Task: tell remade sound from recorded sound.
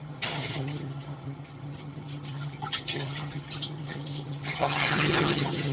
remade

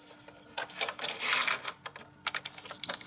recorded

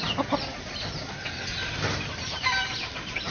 recorded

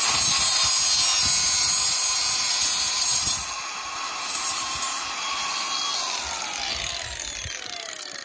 recorded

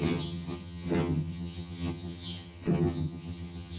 remade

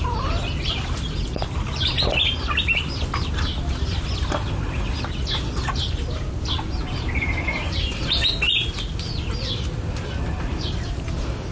recorded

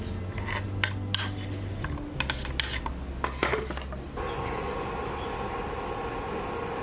recorded